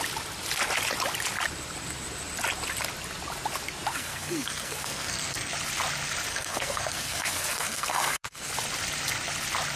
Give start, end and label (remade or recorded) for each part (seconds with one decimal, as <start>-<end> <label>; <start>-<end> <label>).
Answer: 0.0-3.9 recorded; 3.9-5.5 remade; 5.5-6.3 recorded; 6.3-8.5 remade; 8.5-9.8 recorded